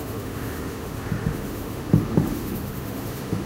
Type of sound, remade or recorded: remade